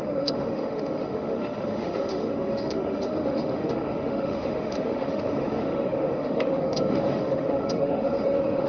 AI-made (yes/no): yes